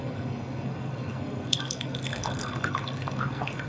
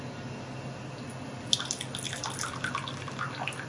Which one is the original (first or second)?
second